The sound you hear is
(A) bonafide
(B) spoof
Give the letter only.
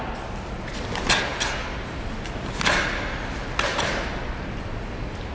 A